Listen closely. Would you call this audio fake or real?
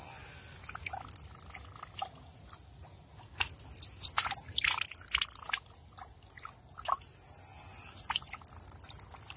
real